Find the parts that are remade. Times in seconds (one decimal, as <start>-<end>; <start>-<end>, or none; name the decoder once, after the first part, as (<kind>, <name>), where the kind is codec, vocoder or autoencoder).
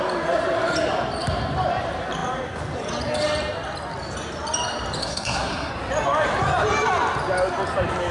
5.0-5.7 (codec, SNAC)